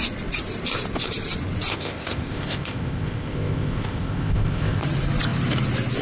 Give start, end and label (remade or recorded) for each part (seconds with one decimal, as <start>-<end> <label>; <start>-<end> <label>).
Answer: 0.0-1.7 recorded; 1.7-4.8 remade; 4.8-6.0 recorded